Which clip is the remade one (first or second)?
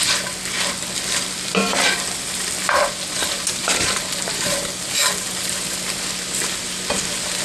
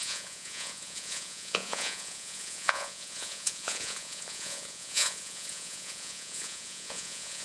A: second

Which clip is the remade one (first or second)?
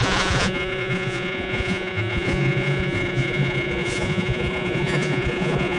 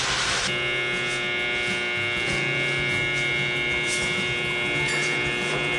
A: first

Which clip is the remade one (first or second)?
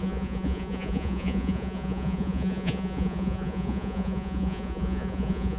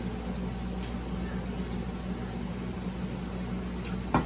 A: first